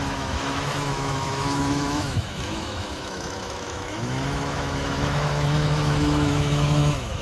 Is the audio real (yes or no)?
no